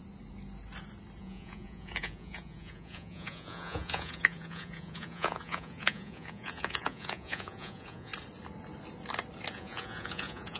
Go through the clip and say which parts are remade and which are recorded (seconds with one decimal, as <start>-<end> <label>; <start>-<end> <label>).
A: 0.0-1.2 recorded; 1.2-8.1 remade; 8.1-9.5 recorded; 9.5-10.6 remade

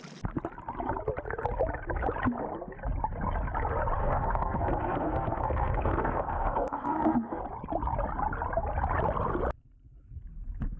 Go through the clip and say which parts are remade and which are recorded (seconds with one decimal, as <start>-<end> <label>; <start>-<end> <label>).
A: 0.0-4.0 recorded; 4.0-7.4 remade; 7.4-10.8 recorded

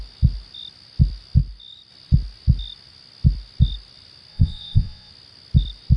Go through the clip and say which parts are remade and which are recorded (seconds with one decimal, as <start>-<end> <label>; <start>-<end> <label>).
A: 0.0-4.3 recorded; 4.3-5.1 remade; 5.1-6.0 recorded

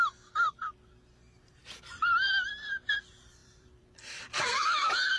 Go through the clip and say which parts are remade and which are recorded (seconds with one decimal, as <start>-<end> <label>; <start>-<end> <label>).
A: 0.0-1.6 recorded; 1.6-2.5 remade; 2.5-3.4 recorded; 3.4-5.2 remade

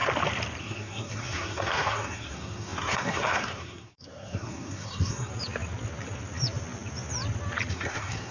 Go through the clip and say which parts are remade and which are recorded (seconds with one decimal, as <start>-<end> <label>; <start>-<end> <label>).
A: 0.0-0.6 recorded; 0.6-5.3 remade; 5.3-7.7 recorded; 7.7-8.3 remade

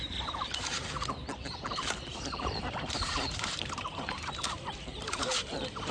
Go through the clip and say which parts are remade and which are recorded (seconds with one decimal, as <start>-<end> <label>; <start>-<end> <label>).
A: 0.0-2.1 recorded; 2.1-4.3 remade; 4.3-5.9 recorded

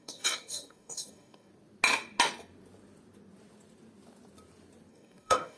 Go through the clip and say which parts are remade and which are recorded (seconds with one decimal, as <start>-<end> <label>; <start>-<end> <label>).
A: 0.0-1.5 remade; 1.5-4.9 recorded; 4.9-5.6 remade